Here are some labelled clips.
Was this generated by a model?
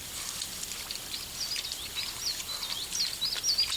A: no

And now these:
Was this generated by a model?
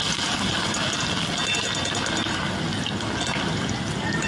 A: no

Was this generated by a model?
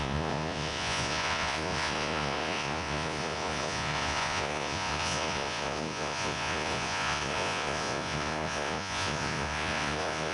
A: yes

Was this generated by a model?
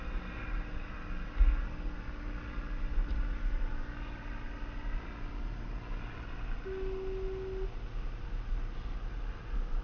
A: no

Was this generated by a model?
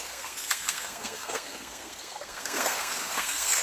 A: yes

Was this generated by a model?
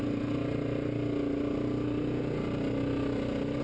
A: no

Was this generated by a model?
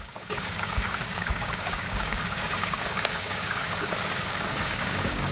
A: yes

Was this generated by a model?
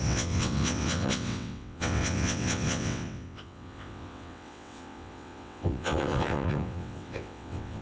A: yes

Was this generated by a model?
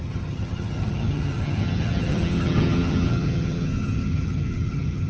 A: yes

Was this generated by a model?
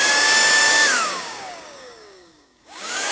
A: yes